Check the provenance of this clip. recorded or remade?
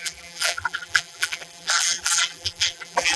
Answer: remade